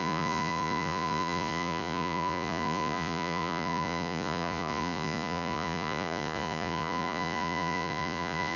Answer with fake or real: fake